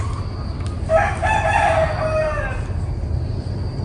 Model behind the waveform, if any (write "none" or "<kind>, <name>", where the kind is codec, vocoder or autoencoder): none